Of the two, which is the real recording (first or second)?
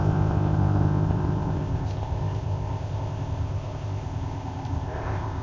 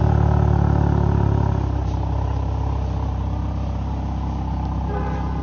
second